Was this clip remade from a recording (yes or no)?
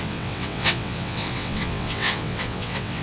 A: yes